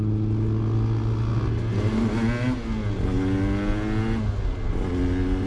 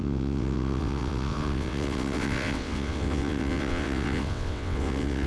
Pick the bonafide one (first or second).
first